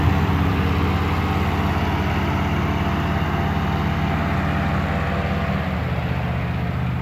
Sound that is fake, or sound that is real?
real